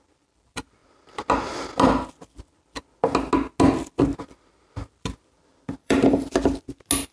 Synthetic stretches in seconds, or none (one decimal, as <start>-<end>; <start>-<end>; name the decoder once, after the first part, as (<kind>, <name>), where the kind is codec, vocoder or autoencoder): 5.8-6.3 (vocoder, BigVGAN v2)